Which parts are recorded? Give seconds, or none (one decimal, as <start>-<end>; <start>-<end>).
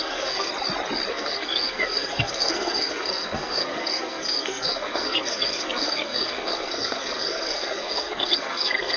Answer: 0.5-1.1